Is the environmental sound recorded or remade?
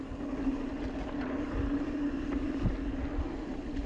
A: recorded